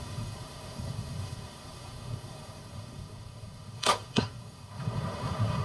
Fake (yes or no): yes